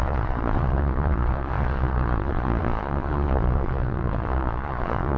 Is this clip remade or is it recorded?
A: remade